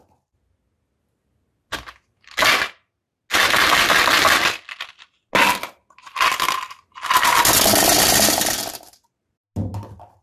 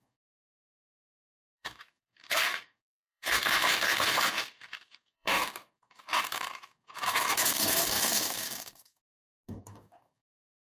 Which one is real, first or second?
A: first